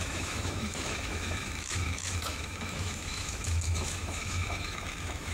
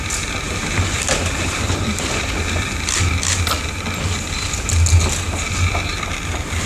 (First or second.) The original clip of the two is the second